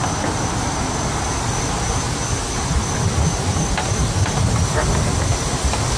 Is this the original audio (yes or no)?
yes